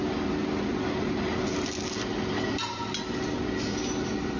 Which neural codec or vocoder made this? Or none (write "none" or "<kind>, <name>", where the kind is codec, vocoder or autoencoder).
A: none